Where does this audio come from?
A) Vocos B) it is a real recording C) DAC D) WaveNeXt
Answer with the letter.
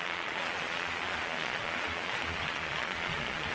A